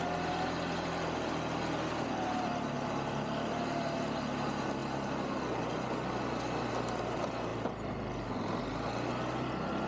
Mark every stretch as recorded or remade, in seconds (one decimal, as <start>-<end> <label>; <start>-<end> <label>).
0.0-9.9 recorded